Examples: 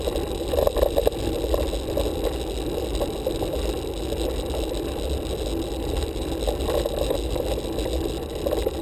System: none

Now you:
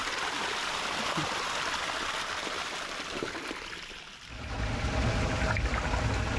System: none